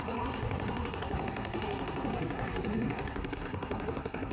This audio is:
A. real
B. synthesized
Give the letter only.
B